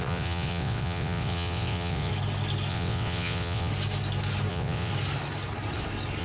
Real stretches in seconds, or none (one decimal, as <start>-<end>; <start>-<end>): 2.1-2.7; 3.7-4.5; 4.9-6.2